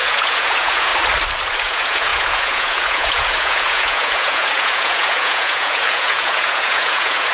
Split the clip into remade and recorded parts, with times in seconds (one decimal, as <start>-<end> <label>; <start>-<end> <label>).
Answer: 0.0-0.9 remade; 0.9-1.6 recorded; 1.6-7.3 remade